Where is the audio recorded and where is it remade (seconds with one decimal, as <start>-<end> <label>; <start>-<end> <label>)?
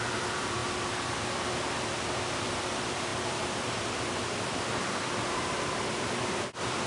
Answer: 0.0-0.6 remade; 0.6-1.8 recorded; 1.8-6.9 remade